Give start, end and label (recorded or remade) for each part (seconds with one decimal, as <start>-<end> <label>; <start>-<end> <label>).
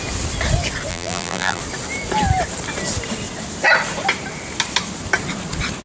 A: 0.0-0.9 recorded; 0.9-1.6 remade; 1.6-5.8 recorded